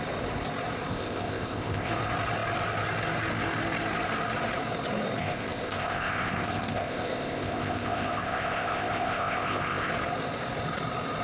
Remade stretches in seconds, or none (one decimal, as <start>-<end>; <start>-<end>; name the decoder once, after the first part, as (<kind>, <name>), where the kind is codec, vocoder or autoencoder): 0.9-1.9 (codec, ZipCodec); 5.2-9.9